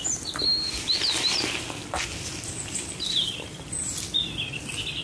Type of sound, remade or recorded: recorded